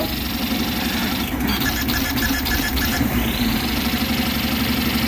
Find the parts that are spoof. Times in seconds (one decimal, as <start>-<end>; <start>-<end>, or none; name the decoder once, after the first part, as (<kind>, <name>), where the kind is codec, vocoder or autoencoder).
1.0-3.9 (vocoder, BigVGAN v2)